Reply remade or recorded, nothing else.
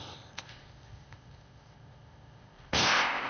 remade